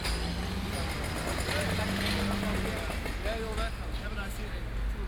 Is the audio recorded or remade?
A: recorded